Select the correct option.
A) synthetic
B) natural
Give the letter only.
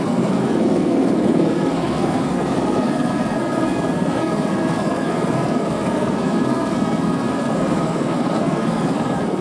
A